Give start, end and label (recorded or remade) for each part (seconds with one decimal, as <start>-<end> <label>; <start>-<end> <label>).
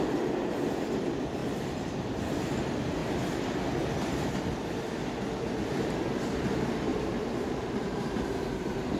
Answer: 0.0-1.4 recorded; 1.4-2.3 remade; 2.3-6.9 recorded; 6.9-9.0 remade